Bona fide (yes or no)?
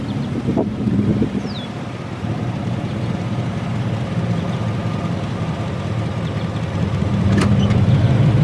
no